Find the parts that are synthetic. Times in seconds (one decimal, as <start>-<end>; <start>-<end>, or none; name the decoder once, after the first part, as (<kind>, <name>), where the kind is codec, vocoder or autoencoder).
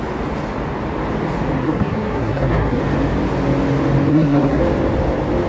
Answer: 1.6-2.8 (codec, SNAC); 4.1-4.6